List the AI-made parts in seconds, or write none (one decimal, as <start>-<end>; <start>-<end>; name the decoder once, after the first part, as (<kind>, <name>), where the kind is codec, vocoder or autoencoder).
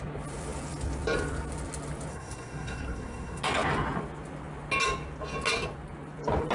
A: 2.1-3.4 (codec, SNAC)